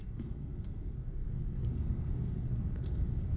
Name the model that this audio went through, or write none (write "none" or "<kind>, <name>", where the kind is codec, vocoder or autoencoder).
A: codec, SNAC